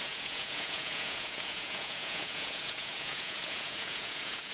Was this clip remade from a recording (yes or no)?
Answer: yes